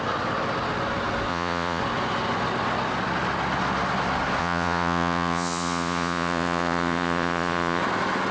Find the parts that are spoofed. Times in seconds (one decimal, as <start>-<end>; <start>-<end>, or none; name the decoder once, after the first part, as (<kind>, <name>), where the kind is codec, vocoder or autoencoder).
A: 1.3-1.8 (vocoder, Vocos); 4.4-7.8